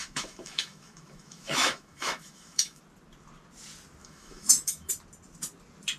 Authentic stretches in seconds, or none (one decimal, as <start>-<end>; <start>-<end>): 2.8-4.0; 4.9-6.0